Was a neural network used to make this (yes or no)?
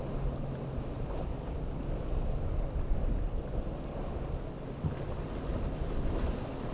no